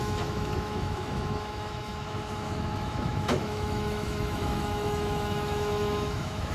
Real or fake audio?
fake